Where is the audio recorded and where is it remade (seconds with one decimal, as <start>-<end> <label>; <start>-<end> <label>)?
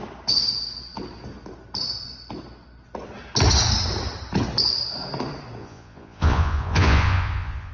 0.0-5.6 recorded; 5.6-7.7 remade